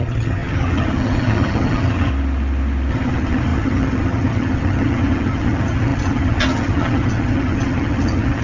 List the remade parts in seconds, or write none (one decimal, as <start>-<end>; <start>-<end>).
0.0-2.1; 2.9-8.4